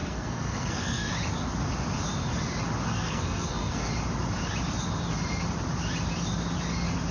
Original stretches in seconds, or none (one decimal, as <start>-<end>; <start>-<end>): 1.1-2.9; 3.9-7.1